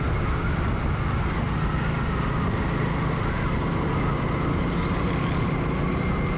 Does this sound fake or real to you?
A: real